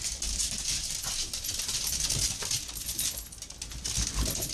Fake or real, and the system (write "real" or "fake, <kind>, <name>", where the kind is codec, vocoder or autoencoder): real